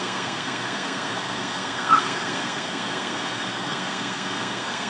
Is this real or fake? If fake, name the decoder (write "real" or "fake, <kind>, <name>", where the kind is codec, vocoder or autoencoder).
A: fake, codec, SNAC